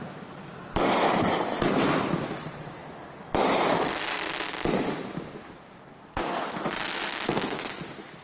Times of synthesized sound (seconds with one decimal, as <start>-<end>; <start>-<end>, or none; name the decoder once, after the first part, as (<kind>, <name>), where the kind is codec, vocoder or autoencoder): 5.9-6.4 (codec, SNAC)